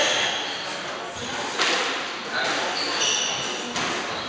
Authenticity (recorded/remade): recorded